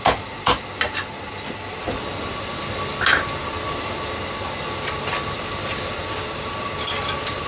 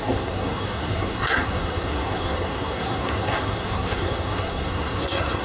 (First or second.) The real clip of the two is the first